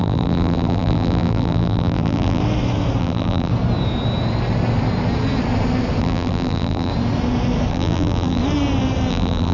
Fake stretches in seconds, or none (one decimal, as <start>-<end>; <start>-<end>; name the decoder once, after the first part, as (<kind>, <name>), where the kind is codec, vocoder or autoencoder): 0.0-2.4 (vocoder, BigVGAN v2); 3.0-3.5; 6.0-6.9; 7.7-8.4; 9.1-9.5